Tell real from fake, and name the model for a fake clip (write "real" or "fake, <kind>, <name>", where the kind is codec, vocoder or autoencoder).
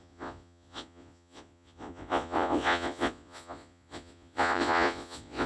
fake, vocoder, Vocos